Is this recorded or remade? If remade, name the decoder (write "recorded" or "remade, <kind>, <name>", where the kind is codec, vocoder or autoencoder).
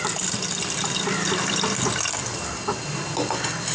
recorded